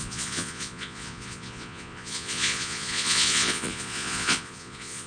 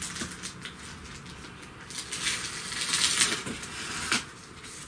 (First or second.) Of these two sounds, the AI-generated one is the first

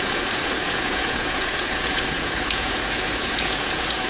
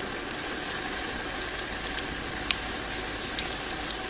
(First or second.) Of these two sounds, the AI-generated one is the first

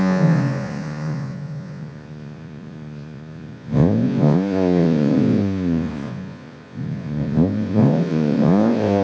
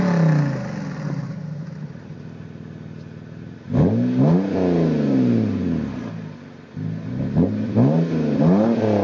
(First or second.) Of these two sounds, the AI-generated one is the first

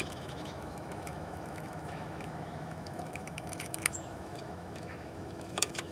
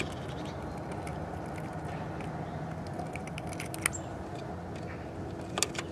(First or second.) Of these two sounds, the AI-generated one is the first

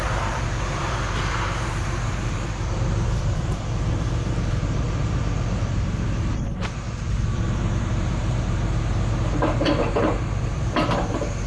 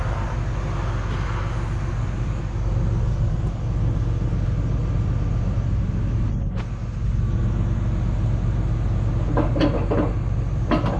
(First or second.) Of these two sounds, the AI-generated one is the first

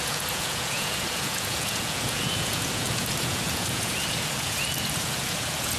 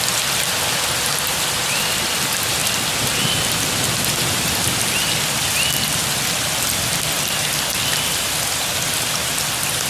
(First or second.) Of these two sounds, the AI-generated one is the first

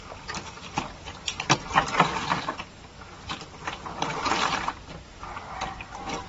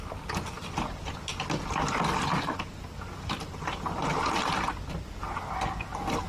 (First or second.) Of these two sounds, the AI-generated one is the first